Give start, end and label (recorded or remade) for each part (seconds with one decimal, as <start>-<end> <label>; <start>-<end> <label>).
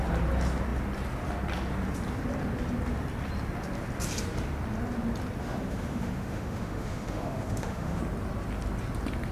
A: 0.0-5.4 recorded; 5.4-8.0 remade; 8.0-9.3 recorded